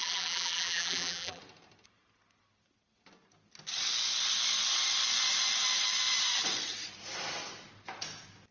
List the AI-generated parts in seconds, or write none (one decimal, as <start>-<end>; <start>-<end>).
0.0-1.4